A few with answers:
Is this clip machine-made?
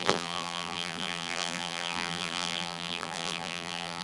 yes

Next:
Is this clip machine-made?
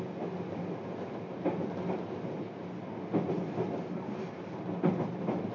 no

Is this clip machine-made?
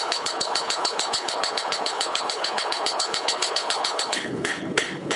yes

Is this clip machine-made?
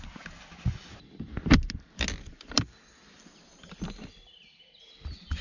no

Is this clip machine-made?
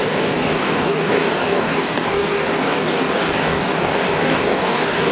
yes